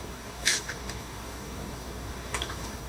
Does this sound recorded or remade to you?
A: remade